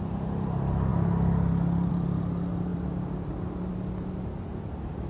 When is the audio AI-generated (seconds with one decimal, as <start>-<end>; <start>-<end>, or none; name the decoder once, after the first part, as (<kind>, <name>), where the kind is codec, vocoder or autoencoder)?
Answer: none

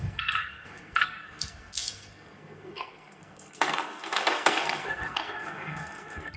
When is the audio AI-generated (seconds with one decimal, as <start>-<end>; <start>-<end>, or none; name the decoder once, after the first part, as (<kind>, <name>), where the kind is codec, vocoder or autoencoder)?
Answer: 0.0-6.4 (codec, SNAC)